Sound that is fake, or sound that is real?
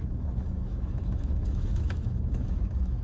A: fake